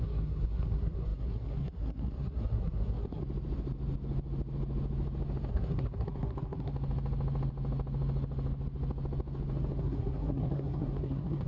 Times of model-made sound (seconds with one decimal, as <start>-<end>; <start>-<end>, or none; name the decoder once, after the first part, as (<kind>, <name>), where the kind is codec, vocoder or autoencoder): 0.0-3.2 (codec, SNAC); 5.5-6.7; 9.8-11.5